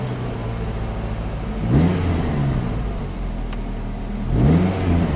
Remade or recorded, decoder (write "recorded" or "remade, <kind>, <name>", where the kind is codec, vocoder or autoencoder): recorded